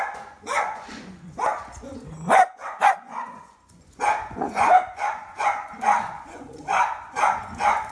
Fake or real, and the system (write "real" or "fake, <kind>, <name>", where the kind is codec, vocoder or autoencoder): fake, vocoder, Vocos